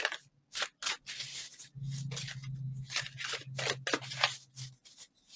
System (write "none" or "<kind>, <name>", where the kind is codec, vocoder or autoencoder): none